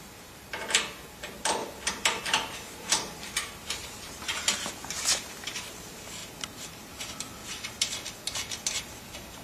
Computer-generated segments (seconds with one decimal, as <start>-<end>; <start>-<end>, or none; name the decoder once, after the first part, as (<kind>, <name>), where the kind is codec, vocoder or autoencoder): 1.6-4.7 (vocoder, BigVGAN v2)